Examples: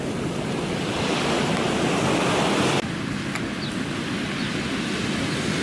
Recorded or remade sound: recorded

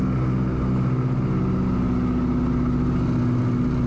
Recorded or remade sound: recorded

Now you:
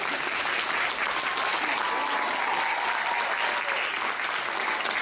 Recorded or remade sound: recorded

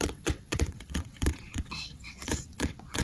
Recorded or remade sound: remade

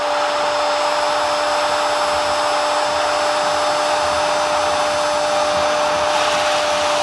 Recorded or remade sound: recorded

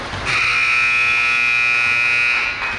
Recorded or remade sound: recorded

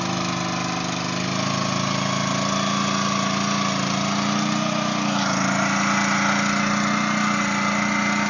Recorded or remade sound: recorded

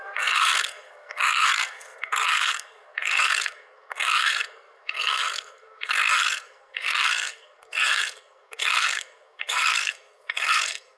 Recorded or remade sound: remade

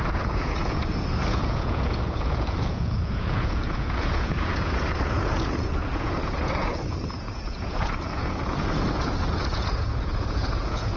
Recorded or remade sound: remade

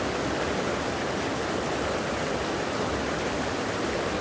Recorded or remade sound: recorded